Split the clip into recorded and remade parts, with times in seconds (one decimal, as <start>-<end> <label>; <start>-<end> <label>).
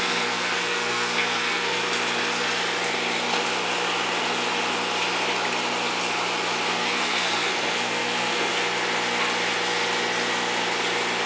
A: 0.0-1.8 remade; 1.8-6.7 recorded; 6.7-8.5 remade; 8.5-11.3 recorded